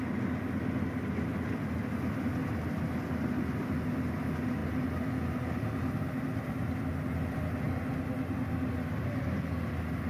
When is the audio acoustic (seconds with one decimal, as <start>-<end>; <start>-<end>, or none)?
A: 0.0-10.1